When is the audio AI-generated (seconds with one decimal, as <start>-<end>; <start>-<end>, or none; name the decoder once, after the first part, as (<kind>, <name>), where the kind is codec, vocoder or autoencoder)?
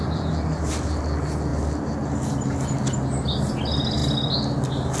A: none